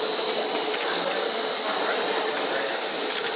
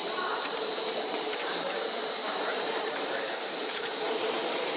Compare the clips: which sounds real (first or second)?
first